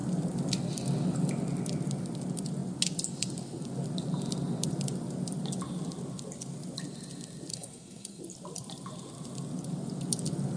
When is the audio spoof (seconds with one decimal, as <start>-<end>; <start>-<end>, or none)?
7.5-8.2